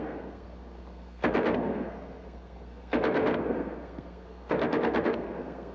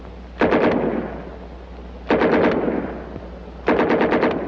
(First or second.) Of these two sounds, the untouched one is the second